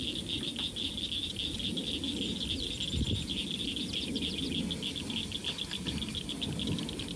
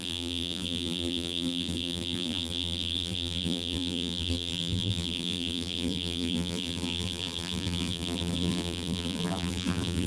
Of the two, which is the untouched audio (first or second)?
first